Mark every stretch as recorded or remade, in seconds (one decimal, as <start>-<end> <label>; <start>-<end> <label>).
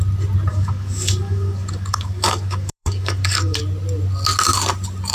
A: 0.0-0.5 recorded; 0.5-3.6 remade; 3.6-5.1 recorded